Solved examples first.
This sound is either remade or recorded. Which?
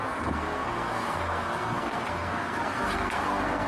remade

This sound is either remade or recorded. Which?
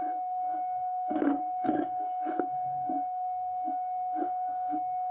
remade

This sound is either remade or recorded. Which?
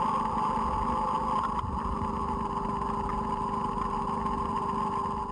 recorded